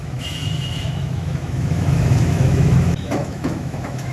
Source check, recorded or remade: remade